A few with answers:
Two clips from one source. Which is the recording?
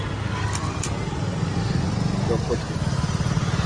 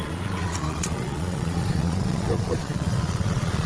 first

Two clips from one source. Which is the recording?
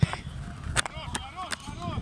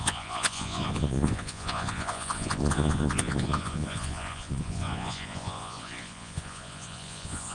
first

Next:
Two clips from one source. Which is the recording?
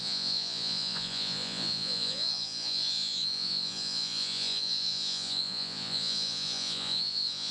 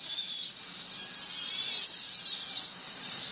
second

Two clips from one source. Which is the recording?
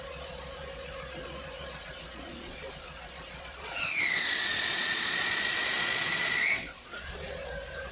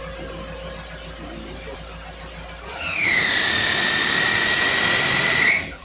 second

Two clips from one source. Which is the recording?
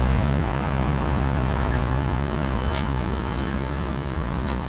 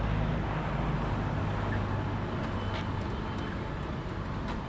second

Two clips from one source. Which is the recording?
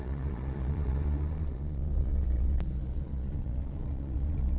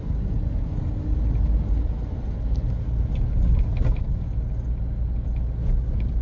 second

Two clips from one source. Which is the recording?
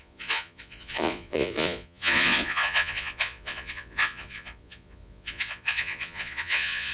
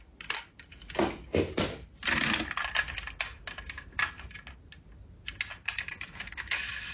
second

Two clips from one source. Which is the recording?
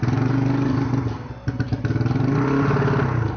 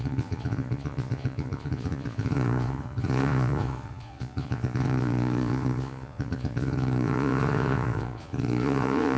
first